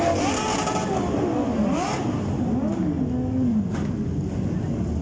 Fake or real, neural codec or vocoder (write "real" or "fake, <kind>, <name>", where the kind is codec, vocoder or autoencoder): real